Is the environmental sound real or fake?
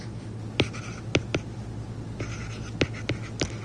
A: real